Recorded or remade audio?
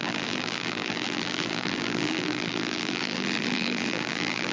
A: remade